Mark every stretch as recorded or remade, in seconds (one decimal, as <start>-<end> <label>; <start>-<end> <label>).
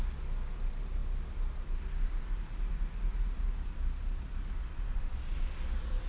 0.0-6.1 recorded